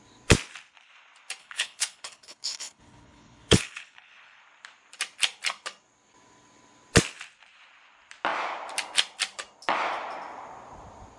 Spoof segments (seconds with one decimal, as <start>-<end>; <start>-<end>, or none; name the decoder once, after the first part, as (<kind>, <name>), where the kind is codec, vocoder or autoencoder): 1.4-4.4 (codec, HILCodec)